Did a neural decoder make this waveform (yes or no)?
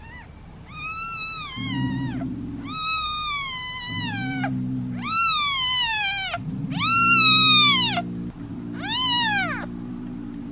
no